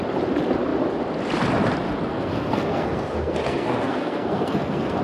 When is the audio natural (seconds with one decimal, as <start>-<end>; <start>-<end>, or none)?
0.0-2.1